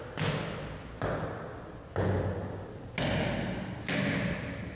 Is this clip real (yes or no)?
yes